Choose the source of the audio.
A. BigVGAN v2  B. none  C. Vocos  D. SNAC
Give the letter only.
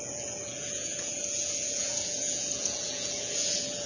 C